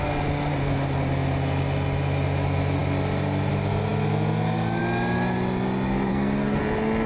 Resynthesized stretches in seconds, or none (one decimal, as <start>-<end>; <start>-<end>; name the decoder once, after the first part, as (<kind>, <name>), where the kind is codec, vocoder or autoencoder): 6.1-6.6 (codec, SNAC)